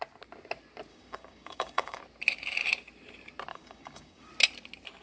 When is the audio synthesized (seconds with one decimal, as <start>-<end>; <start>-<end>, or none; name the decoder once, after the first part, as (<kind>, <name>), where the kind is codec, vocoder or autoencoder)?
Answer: 0.9-2.0 (codec, DAC); 3.5-4.3